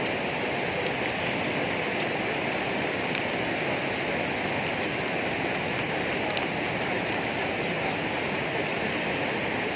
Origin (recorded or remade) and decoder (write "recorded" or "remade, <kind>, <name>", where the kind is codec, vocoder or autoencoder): recorded